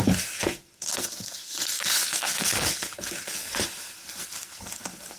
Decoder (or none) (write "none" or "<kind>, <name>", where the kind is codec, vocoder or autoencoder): codec, SNAC